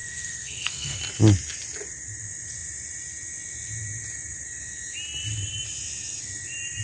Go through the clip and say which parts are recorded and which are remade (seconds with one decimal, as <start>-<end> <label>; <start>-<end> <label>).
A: 0.0-1.0 remade; 1.0-6.8 recorded